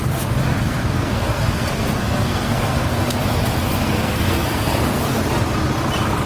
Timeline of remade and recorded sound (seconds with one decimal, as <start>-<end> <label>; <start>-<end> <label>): 0.0-0.5 recorded; 0.5-3.0 remade; 3.0-3.6 recorded; 3.6-5.2 remade; 5.2-6.3 recorded

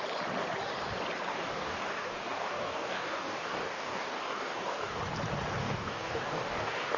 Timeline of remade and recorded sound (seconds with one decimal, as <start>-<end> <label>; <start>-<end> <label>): 0.0-1.3 recorded; 1.3-5.0 remade; 5.0-5.6 recorded; 5.6-7.0 remade

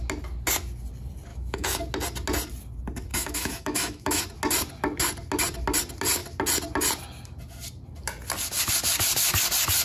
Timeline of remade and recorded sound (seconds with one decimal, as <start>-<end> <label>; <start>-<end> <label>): 0.0-1.3 recorded; 1.3-1.8 remade; 1.8-3.1 recorded; 3.1-4.2 remade; 4.2-9.8 recorded

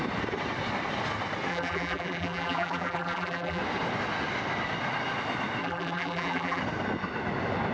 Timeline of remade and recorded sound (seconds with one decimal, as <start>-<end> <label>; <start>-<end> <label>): 0.0-1.5 recorded; 1.5-3.6 remade; 3.6-5.6 recorded; 5.6-6.6 remade; 6.6-7.7 recorded

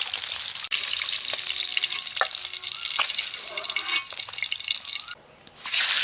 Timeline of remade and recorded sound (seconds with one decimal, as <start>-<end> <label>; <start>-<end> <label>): 0.0-6.0 recorded

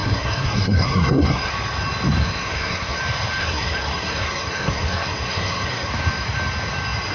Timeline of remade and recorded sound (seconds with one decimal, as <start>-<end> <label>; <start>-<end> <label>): 0.0-1.5 remade; 1.5-2.2 recorded; 2.2-3.0 remade; 3.0-3.4 recorded; 3.4-5.9 remade; 5.9-7.1 recorded

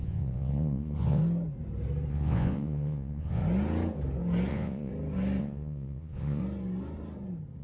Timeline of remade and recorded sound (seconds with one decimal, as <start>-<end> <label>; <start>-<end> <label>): 0.0-1.2 remade; 1.2-2.1 recorded; 2.1-3.4 remade; 3.4-4.5 recorded; 4.5-4.9 remade; 4.9-5.4 recorded; 5.4-6.4 remade; 6.4-7.6 recorded